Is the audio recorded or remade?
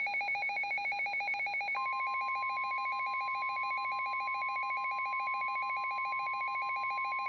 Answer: recorded